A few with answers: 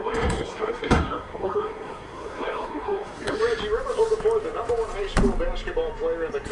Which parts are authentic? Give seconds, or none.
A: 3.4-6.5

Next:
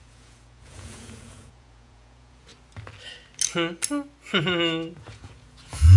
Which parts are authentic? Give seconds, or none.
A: 2.5-5.0